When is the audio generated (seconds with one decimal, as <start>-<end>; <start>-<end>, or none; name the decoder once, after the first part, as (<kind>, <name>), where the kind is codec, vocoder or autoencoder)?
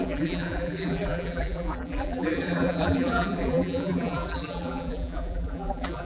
0.0-6.0 (vocoder, BigVGAN v2)